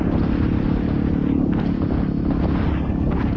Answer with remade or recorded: remade